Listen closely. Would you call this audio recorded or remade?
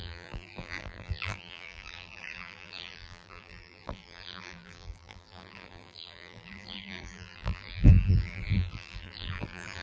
remade